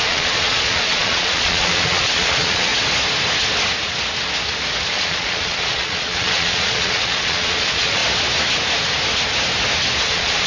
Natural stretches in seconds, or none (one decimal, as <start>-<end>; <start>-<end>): 2.7-4.9; 8.0-10.0